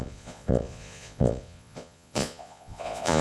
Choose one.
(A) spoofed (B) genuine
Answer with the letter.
A